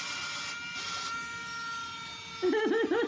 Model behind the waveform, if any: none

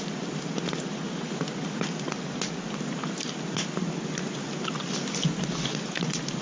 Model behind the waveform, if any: none